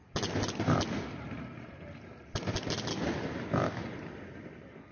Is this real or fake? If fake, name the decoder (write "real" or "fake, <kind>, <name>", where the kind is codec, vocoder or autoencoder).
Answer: real